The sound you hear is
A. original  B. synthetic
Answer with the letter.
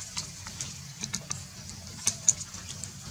A